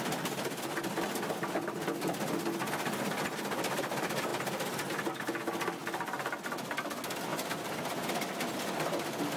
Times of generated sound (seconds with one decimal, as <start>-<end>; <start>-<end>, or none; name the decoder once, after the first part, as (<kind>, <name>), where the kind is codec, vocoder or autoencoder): none